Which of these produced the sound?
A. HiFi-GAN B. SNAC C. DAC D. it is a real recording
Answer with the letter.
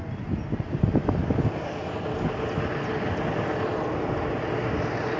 D